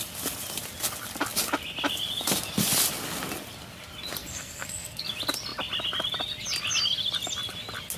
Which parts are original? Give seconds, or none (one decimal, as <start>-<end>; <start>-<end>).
0.0-4.2; 5.0-8.0